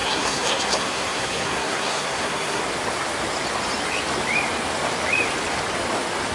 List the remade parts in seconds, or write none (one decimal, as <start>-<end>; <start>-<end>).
0.0-2.6